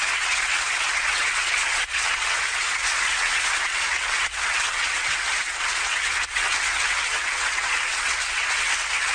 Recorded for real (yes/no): no